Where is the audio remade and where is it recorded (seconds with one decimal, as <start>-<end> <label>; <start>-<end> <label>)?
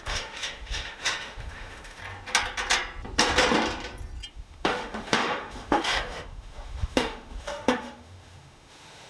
0.0-2.0 remade; 2.0-4.3 recorded; 4.3-9.1 remade